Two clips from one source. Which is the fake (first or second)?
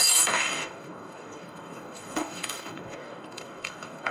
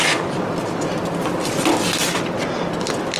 first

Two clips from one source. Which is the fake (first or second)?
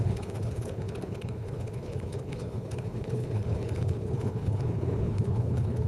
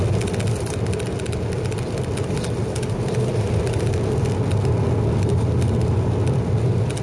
first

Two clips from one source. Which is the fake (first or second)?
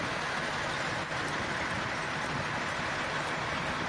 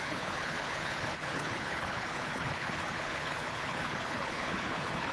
second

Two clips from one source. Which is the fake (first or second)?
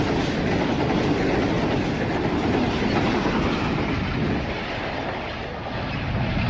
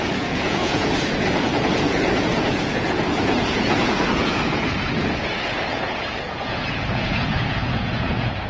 second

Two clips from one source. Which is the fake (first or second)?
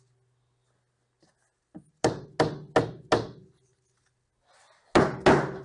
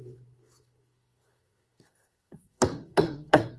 second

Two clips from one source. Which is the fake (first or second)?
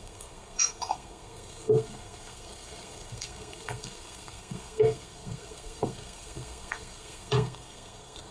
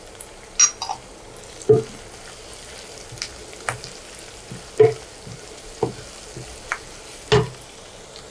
first